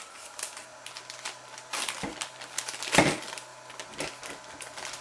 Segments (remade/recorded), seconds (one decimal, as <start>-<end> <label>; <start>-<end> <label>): 0.0-5.0 recorded